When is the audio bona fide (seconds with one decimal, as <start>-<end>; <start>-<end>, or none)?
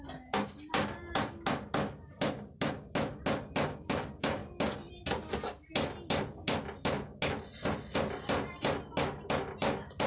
0.0-10.1